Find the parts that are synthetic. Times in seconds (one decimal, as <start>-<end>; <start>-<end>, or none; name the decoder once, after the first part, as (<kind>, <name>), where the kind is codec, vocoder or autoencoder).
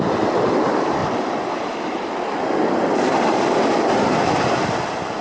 none